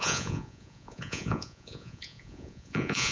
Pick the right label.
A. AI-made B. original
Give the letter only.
A